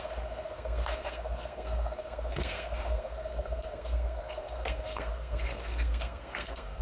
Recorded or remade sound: remade